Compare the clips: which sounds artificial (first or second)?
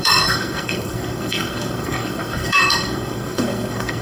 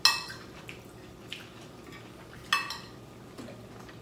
first